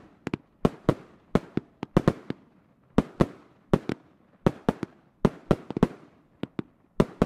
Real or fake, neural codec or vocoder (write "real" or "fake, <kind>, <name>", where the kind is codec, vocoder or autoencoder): real